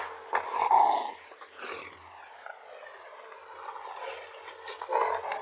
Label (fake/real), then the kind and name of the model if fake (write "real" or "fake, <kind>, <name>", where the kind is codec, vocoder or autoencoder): real